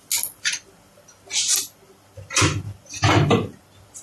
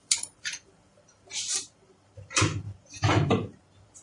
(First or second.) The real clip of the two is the first